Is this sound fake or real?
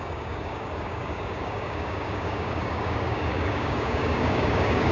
fake